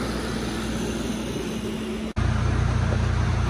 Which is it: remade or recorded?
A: recorded